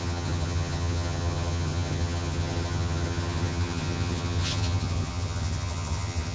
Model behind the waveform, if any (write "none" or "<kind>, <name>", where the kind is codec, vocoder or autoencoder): vocoder, HiFi-GAN